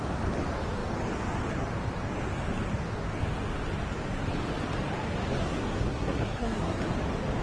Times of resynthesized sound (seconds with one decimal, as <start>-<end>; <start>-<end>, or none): 5.4-6.8